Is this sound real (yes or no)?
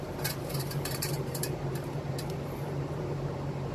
no